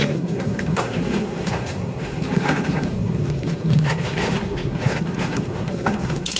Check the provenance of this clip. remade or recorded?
remade